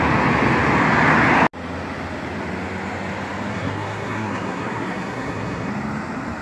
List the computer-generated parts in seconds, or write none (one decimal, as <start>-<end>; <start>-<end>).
3.5-5.7